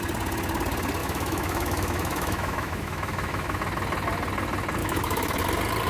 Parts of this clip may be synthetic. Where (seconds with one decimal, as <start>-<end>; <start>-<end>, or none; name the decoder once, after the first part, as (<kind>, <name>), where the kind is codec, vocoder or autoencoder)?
1.0-3.6 (autoencoder, DAC-VAE); 4.8-5.4